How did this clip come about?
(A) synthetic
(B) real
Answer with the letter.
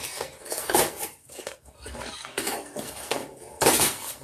A